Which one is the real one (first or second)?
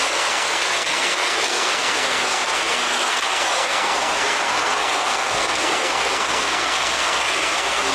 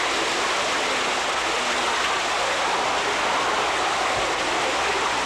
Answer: second